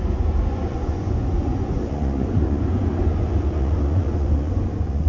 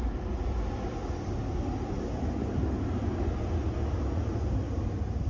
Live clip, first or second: second